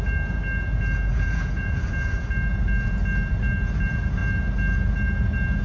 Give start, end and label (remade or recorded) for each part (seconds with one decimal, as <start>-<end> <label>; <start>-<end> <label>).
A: 0.0-1.1 recorded; 1.1-1.8 remade; 1.8-5.6 recorded